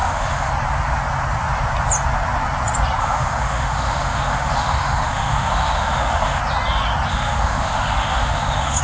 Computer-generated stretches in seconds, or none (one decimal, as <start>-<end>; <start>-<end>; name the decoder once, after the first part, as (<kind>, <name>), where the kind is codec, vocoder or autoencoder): 0.0-0.5 (autoencoder, DAC-VAE); 3.0-6.4; 7.1-8.8